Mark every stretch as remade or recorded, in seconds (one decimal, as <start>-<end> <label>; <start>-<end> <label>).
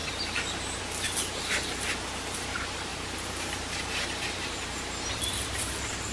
0.0-6.1 remade